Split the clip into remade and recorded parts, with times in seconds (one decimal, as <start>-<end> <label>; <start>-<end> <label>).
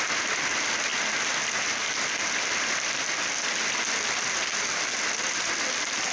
0.0-6.1 recorded